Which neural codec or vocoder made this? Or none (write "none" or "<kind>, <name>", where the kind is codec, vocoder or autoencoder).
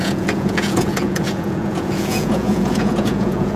vocoder, Vocos